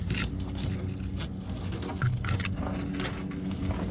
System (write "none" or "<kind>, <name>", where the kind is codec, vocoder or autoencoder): none